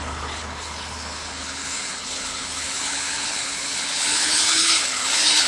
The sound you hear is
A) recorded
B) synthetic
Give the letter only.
B